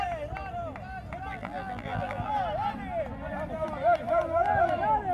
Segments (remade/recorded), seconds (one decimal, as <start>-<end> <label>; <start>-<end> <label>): 0.0-1.3 recorded; 1.3-2.3 remade; 2.3-5.1 recorded